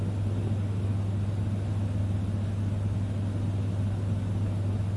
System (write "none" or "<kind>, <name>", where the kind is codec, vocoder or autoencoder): none